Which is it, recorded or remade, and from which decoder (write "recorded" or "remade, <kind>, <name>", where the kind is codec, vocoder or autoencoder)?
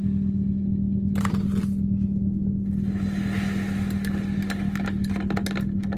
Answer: recorded